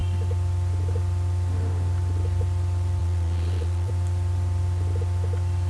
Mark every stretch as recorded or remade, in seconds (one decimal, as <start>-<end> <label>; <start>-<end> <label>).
0.0-3.0 recorded; 3.0-3.9 remade; 3.9-5.7 recorded